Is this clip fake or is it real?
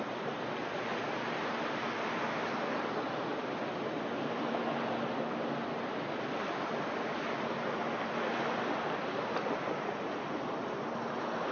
real